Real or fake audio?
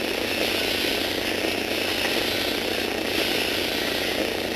real